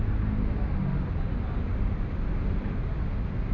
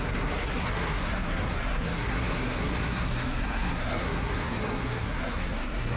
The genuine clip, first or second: first